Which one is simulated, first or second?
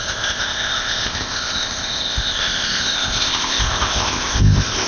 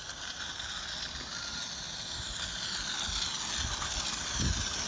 first